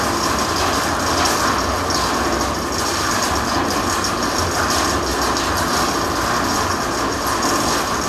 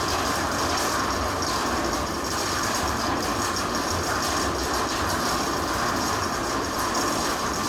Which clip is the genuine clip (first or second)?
first